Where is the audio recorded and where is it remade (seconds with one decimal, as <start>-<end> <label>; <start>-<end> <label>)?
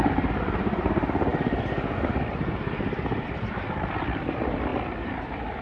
0.0-1.3 recorded; 1.3-4.3 remade; 4.3-5.6 recorded